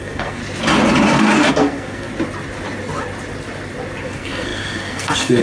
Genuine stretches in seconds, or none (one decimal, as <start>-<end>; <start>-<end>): 0.4-1.5; 2.1-4.1